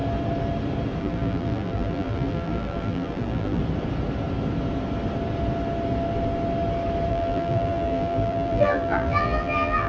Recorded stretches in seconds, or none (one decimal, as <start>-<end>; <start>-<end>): 0.0-1.0; 3.6-7.1